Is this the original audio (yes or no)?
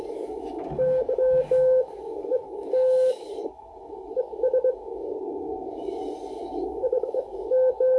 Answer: no